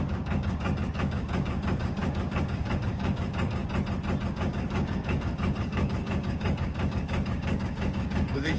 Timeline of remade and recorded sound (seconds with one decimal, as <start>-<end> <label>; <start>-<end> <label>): 0.0-3.6 remade; 3.6-4.3 recorded; 4.3-8.6 remade